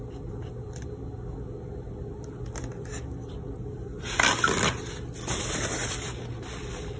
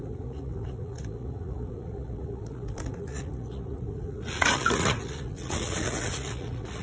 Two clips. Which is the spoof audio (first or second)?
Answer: second